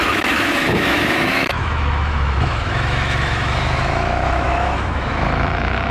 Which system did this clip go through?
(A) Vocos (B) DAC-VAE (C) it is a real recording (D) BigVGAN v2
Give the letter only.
B